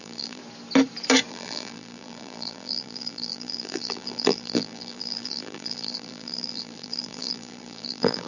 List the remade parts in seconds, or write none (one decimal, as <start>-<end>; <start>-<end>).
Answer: 0.0-0.4; 1.3-8.3